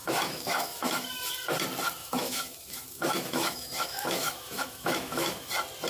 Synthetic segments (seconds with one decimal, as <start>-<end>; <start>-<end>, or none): 0.0-1.3; 2.0-5.5